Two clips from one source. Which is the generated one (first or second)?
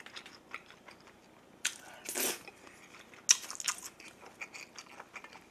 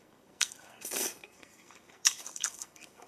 second